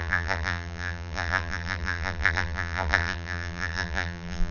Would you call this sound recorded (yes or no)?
no